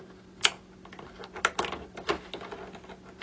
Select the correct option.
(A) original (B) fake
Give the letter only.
A